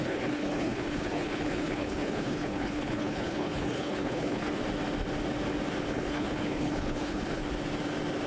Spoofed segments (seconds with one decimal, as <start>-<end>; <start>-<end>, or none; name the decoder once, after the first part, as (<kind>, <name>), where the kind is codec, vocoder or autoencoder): 0.0-4.6 (codec, HILCodec); 5.9-7.4